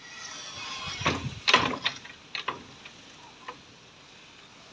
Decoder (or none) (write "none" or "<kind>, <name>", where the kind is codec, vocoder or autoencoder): none